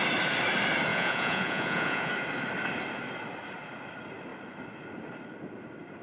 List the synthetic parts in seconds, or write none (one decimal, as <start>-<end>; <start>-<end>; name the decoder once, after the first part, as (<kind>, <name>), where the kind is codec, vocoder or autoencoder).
0.9-2.1 (vocoder, Vocos)